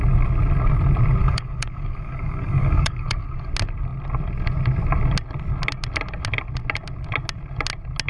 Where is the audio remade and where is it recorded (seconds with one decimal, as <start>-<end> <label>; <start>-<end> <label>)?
0.0-1.2 recorded; 1.2-3.5 remade; 3.5-8.1 recorded